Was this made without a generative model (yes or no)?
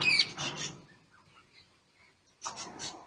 no